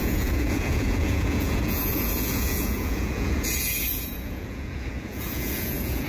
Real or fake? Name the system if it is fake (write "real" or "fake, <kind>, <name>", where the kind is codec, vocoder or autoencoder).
fake, vocoder, Vocos